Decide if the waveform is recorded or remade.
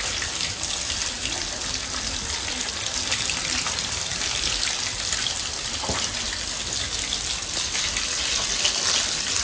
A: recorded